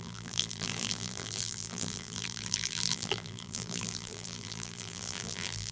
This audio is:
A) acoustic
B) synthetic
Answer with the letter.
B